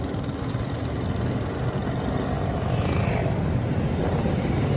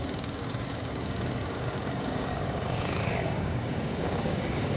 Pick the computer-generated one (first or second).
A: second